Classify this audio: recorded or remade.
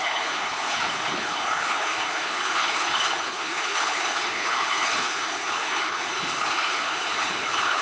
remade